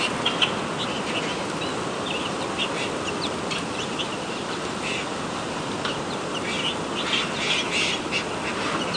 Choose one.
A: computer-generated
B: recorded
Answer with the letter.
B